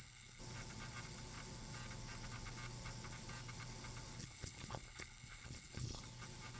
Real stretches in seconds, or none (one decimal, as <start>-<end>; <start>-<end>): 0.4-4.2; 6.0-6.6